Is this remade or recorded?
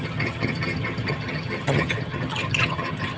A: remade